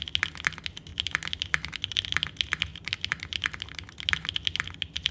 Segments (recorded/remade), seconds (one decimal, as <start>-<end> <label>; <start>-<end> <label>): 0.0-2.7 recorded; 2.7-3.6 remade; 3.6-5.1 recorded